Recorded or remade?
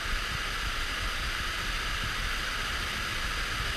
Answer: recorded